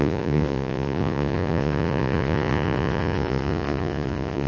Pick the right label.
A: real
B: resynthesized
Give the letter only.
B